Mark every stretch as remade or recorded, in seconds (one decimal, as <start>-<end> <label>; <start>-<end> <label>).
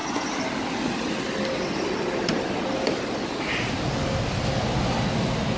0.0-5.6 recorded